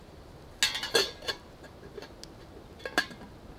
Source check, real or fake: real